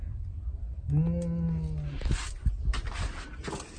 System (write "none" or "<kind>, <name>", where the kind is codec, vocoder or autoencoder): none